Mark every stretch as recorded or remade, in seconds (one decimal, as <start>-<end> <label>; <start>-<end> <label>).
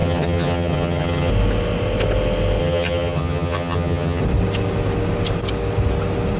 0.0-1.3 remade; 1.3-2.6 recorded; 2.6-4.2 remade; 4.2-6.4 recorded